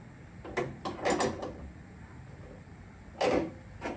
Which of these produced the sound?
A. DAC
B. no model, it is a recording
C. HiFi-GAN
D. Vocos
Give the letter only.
B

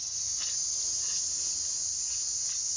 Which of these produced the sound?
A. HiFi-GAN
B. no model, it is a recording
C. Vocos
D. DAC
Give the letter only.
B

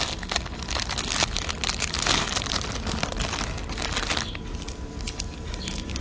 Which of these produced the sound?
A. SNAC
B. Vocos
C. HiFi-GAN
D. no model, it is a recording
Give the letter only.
D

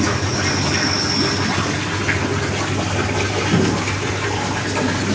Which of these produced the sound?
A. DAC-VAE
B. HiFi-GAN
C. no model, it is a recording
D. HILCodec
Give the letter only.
C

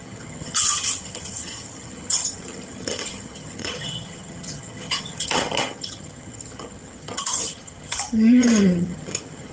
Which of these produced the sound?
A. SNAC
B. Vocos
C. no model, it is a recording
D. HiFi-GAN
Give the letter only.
D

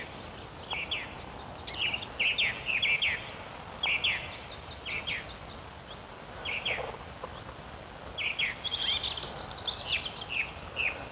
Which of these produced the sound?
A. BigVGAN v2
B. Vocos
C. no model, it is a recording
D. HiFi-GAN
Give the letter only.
C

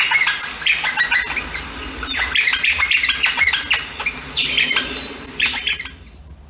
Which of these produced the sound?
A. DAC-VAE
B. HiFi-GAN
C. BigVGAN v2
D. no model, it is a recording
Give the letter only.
D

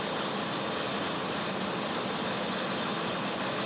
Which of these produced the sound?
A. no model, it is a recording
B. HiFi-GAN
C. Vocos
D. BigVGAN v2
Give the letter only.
A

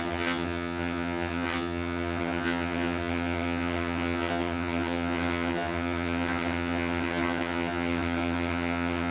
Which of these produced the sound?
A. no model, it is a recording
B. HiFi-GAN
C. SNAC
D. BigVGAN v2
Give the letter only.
B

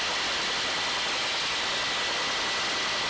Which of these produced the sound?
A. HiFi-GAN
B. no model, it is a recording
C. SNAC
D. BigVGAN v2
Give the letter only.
B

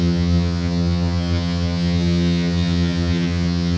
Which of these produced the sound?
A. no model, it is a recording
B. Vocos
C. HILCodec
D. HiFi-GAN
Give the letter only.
D